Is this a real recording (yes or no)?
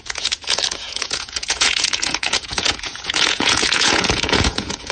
no